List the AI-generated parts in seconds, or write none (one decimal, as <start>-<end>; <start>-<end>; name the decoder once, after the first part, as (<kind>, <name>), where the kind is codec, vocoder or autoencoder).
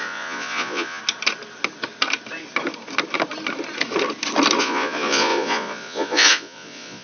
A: 0.0-1.0 (vocoder, Vocos); 4.6-7.0